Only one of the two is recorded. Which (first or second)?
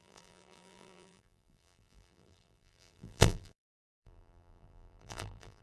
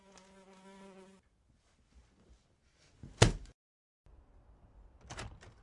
second